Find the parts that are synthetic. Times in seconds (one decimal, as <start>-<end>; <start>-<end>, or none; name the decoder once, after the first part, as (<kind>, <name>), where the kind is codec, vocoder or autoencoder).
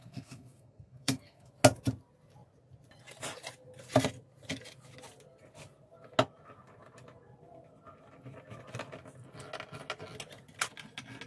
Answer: 0.0-1.5 (codec, SNAC)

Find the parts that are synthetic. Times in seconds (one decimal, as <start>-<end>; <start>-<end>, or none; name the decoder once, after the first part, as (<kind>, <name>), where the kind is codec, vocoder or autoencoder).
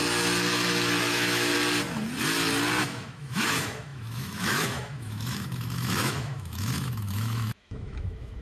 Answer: 1.0-1.5 (autoencoder, DAC-VAE); 2.8-8.4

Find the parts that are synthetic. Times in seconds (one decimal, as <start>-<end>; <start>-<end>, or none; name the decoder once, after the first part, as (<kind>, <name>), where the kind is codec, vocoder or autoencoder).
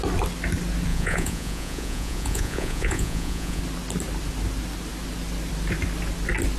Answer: 0.9-3.6 (vocoder, Vocos)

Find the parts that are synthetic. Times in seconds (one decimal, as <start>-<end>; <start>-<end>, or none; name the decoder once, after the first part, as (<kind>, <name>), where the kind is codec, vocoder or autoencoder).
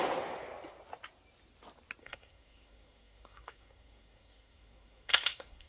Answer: 2.0-5.7 (codec, SNAC)